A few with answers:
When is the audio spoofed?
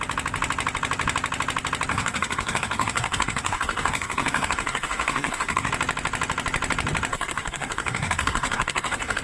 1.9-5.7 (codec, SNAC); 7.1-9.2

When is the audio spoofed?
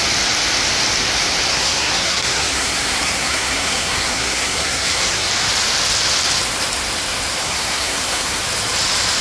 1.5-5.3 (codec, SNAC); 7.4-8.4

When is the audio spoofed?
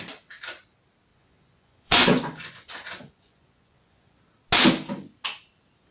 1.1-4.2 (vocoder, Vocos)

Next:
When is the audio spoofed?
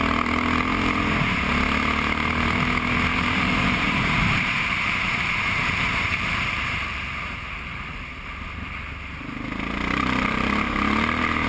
3.1-8.0 (vocoder, BigVGAN v2)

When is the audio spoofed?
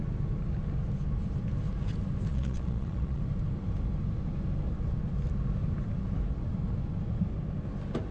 2.3-3.2 (vocoder, Vocos)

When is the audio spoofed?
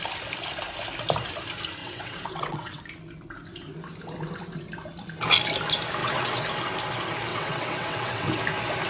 1.8-2.8 (vocoder, WaveNeXt); 6.0-6.5; 7.3-8.4